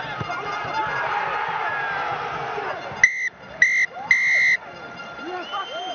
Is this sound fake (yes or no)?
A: no